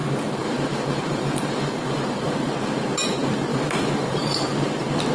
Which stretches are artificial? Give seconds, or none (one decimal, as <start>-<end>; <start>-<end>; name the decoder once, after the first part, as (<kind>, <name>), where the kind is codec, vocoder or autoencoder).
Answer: 0.0-2.5 (vocoder, BigVGAN v2); 3.5-4.4